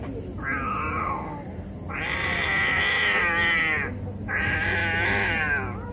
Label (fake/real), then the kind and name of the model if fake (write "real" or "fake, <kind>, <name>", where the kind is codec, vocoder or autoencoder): real